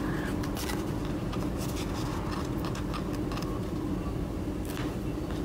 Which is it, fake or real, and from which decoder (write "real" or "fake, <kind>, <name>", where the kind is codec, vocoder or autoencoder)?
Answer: real